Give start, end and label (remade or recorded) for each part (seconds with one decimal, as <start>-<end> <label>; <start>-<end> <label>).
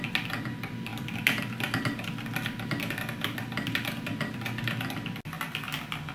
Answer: 0.0-6.1 recorded